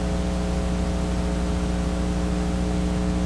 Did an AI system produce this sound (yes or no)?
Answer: no